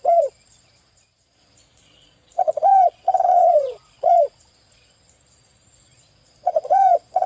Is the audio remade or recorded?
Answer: remade